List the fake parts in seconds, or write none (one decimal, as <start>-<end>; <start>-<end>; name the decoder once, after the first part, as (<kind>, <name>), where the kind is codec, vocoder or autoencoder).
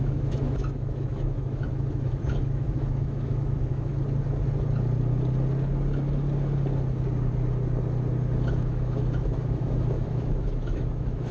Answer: 0.0-3.9 (autoencoder, DAC-VAE); 8.6-11.3